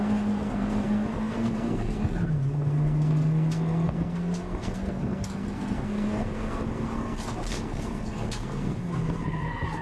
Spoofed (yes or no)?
yes